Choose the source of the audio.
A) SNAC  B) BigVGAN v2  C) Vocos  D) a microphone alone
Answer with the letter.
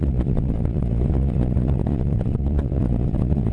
C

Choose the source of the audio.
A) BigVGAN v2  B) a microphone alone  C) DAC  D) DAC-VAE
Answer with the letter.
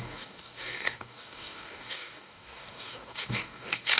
C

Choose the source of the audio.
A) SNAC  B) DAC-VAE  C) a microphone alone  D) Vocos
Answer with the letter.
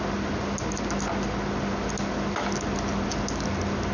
C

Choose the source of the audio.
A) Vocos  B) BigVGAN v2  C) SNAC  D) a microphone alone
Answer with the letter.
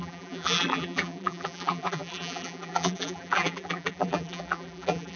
B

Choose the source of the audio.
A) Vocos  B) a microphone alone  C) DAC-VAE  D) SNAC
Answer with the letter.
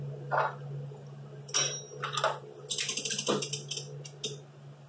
B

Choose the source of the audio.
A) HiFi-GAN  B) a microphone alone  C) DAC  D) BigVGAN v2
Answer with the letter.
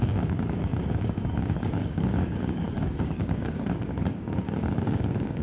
C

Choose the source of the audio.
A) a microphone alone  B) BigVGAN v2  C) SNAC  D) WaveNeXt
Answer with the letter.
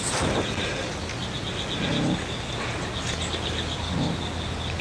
A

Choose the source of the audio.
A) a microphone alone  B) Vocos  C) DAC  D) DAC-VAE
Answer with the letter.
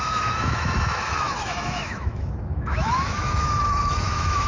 D